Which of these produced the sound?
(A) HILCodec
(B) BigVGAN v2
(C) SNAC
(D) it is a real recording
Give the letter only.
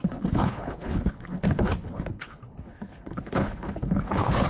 A